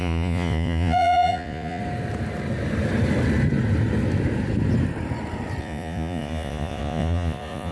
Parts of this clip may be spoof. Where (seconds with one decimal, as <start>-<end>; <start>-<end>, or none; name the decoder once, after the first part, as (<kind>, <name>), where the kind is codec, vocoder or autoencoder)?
0.0-1.8 (vocoder, Vocos); 5.6-7.7